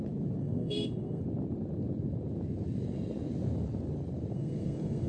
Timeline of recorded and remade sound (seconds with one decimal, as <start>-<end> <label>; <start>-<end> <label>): 0.0-0.4 recorded; 0.4-1.2 remade; 1.2-4.3 recorded; 4.3-5.1 remade